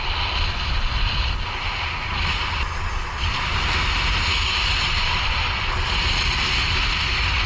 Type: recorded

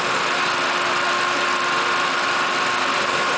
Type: recorded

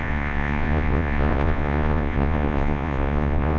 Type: remade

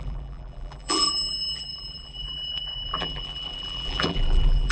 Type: remade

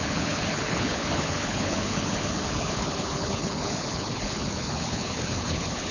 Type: remade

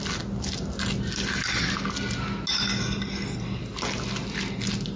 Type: recorded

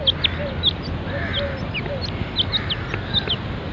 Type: recorded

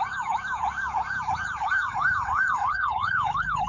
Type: remade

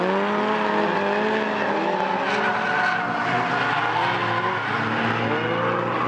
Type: recorded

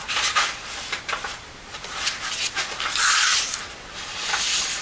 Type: recorded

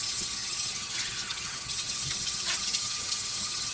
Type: remade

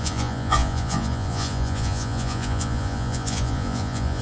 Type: remade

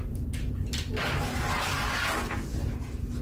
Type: recorded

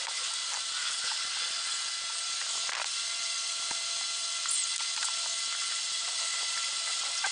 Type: recorded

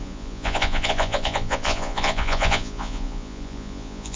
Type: remade